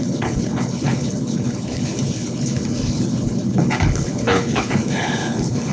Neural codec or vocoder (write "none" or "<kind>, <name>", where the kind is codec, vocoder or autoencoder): codec, HILCodec